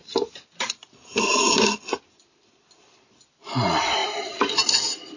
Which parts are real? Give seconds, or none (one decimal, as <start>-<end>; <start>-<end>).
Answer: 0.0-3.1